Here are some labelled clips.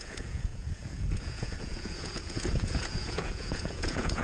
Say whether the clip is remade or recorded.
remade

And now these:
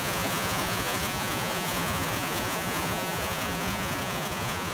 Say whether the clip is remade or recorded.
remade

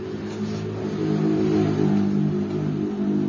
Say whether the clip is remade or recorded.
recorded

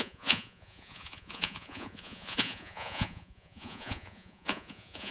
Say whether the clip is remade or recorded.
remade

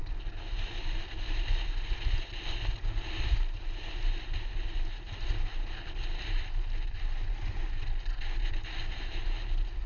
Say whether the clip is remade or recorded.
recorded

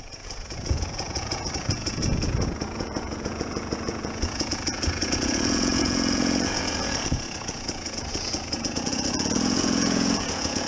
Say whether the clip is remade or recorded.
remade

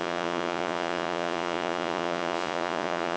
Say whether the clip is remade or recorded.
remade